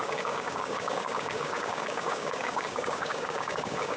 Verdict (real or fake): fake